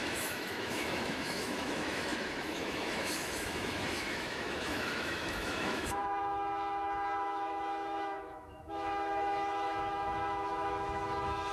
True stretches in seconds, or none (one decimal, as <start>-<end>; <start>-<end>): none